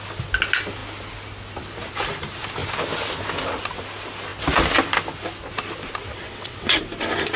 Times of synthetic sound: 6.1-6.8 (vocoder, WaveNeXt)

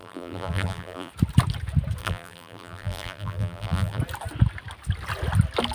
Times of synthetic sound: 0.0-1.1 (vocoder, BigVGAN v2); 2.0-4.0

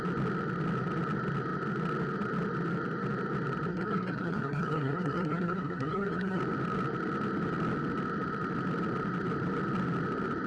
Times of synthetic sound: 3.7-6.4 (codec, SNAC)